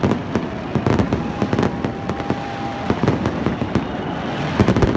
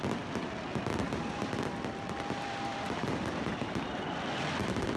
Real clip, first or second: first